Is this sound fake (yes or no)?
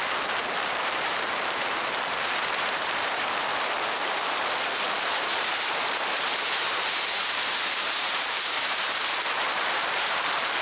yes